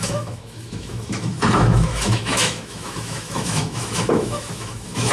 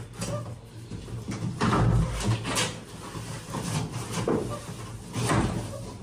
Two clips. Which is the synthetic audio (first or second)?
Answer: first